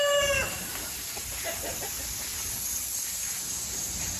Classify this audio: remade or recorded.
remade